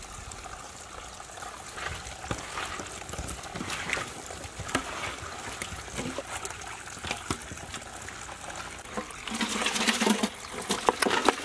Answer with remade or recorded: recorded